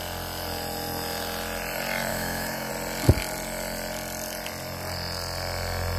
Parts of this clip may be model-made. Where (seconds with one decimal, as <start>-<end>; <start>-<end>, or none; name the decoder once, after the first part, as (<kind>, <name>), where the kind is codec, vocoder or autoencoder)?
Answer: 2.1-2.7 (autoencoder, DAC-VAE)